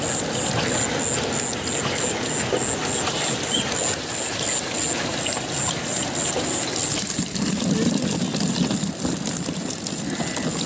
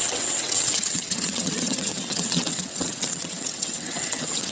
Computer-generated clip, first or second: second